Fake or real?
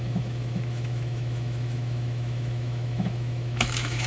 fake